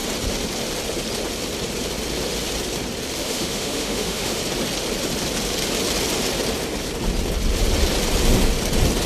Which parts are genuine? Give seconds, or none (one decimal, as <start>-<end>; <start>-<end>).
0.0-3.2; 4.4-9.1